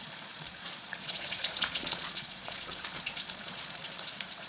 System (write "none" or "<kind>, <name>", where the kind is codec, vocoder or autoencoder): vocoder, Vocos